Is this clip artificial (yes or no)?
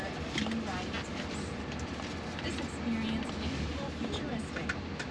no